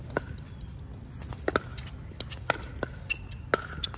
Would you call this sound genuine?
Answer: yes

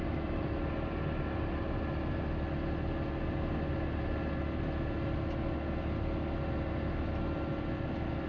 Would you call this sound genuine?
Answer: yes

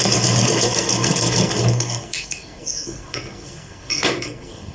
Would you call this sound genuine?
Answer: no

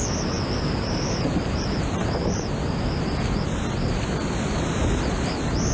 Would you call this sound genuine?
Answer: yes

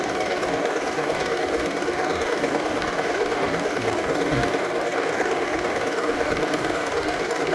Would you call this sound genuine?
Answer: no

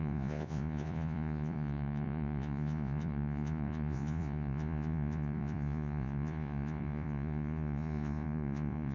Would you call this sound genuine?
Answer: no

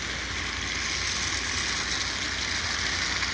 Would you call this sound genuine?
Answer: yes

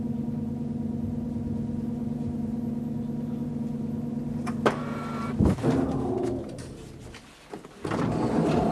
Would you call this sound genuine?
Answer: yes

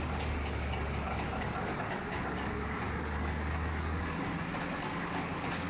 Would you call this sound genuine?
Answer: no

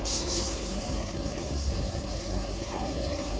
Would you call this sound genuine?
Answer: no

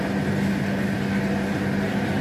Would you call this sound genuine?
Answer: yes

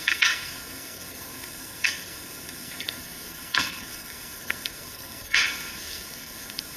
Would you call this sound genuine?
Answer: no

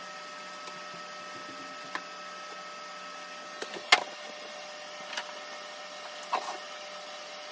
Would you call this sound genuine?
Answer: yes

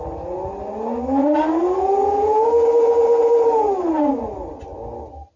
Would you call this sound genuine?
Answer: yes